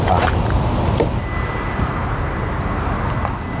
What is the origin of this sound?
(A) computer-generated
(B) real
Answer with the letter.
B